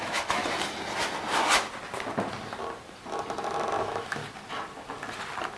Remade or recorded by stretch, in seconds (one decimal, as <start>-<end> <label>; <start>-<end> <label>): 0.0-0.4 remade; 0.4-3.8 recorded; 3.8-4.2 remade; 4.2-5.6 recorded